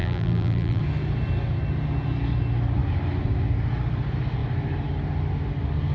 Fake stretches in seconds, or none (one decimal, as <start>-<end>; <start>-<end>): 0.0-0.8